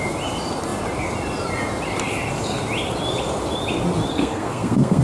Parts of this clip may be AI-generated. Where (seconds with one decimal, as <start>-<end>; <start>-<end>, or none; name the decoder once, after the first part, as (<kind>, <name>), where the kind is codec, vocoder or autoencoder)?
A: 4.1-5.0 (codec, SNAC)